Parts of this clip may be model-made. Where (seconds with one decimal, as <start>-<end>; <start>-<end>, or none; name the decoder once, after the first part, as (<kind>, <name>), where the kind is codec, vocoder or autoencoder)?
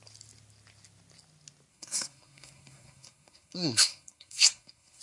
1.7-5.0 (codec, SNAC)